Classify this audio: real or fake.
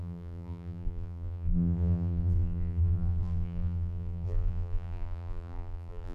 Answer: fake